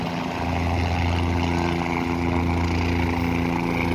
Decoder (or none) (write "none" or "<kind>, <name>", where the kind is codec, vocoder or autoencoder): none